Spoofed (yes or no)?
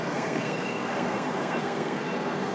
yes